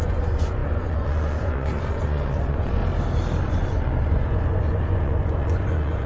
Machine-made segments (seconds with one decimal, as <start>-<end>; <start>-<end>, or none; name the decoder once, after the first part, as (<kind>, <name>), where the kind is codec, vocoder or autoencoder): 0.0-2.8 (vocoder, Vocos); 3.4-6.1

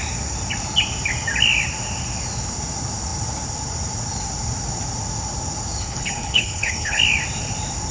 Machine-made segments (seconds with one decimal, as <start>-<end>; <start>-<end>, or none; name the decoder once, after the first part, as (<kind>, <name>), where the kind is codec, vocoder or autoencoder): 5.8-7.0 (codec, HILCodec)

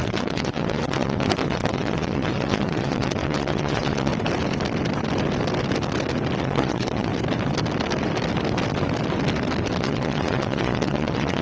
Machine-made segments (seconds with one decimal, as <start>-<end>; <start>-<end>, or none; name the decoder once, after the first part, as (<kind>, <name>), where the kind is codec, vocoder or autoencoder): 0.0-4.1 (vocoder, WaveNeXt); 6.4-7.1; 9.8-11.4

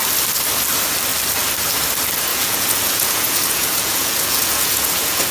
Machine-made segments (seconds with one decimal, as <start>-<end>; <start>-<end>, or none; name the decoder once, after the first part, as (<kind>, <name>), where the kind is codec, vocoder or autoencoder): 2.3-5.3 (vocoder, Vocos)

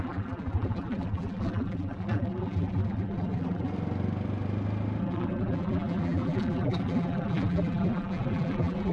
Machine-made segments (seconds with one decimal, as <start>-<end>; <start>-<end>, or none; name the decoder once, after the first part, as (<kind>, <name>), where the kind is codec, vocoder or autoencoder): 0.0-3.7 (vocoder, BigVGAN v2); 5.0-8.9